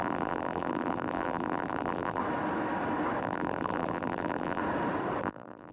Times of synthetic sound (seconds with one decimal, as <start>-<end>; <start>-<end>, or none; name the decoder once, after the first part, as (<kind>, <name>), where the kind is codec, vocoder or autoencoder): 0.0-2.2 (vocoder, BigVGAN v2); 3.2-4.6; 5.2-5.7